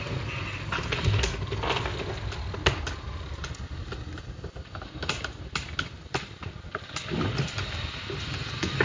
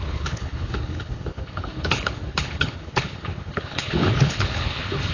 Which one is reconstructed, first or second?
second